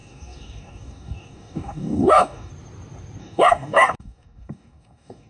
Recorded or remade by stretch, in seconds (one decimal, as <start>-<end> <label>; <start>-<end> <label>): 0.0-2.5 remade; 2.5-3.2 recorded; 3.2-5.3 remade